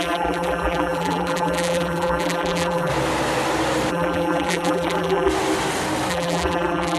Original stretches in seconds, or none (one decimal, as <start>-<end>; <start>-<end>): 2.9-3.9; 5.3-6.1